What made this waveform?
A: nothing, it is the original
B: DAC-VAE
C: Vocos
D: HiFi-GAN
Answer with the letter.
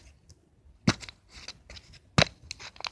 A